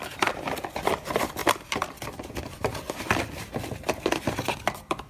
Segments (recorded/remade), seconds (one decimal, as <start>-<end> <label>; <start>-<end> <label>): 0.0-1.4 recorded; 1.4-4.5 remade; 4.5-5.1 recorded

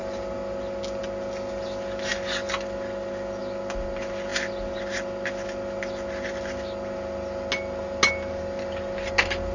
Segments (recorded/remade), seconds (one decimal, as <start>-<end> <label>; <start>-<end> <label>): 0.0-9.5 recorded

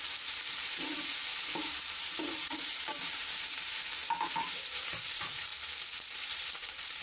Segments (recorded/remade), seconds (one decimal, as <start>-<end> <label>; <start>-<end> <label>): 0.0-5.5 remade; 5.5-6.2 recorded; 6.2-7.0 remade

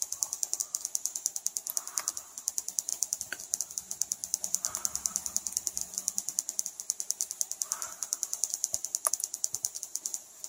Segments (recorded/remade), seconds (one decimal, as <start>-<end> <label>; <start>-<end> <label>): 0.0-2.9 recorded; 2.9-3.6 remade; 3.6-4.2 recorded; 4.2-9.1 remade; 9.1-10.5 recorded

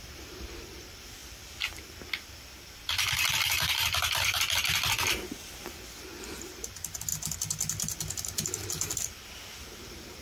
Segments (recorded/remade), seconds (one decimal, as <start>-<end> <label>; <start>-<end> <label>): 0.0-10.2 remade

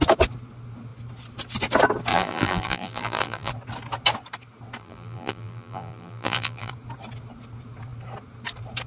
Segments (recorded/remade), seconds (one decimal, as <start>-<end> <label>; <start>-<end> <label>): 0.0-2.1 recorded; 2.1-3.5 remade; 3.5-4.8 recorded; 4.8-6.7 remade; 6.7-8.9 recorded

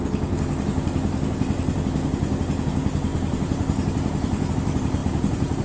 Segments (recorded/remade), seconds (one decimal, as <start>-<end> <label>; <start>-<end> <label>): 0.0-3.1 recorded; 3.1-4.5 remade; 4.5-5.0 recorded; 5.0-5.6 remade

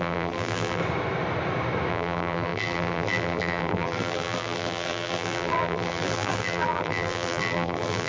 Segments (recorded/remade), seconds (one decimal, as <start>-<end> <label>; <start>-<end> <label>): 0.0-0.8 remade; 0.8-1.9 recorded; 1.9-8.1 remade